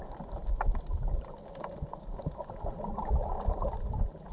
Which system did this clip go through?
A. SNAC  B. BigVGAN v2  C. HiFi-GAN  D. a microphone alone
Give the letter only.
B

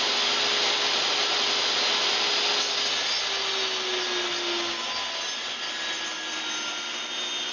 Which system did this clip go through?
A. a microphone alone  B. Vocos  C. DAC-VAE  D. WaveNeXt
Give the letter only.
A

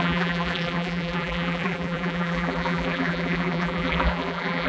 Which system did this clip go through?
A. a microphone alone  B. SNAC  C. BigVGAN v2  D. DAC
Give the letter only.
C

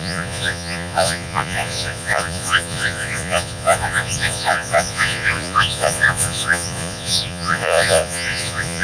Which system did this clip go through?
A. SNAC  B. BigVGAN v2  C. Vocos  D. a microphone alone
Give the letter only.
C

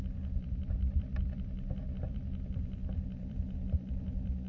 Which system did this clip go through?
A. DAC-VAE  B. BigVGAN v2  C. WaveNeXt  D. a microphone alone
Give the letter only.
B